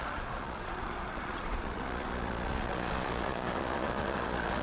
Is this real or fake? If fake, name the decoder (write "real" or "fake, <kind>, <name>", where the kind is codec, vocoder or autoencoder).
fake, vocoder, Vocos